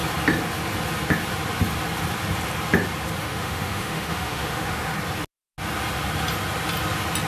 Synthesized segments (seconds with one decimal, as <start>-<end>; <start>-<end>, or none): 3.2-4.9